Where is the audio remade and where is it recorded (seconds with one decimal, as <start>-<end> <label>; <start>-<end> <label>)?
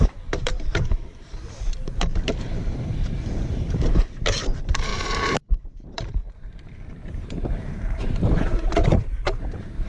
0.0-4.9 remade; 4.9-5.5 recorded; 5.5-9.9 remade